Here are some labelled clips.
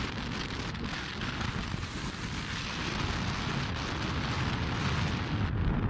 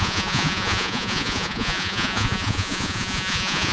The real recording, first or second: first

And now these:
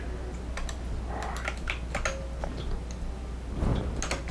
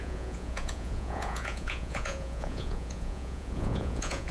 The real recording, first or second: first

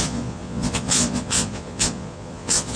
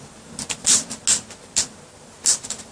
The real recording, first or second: second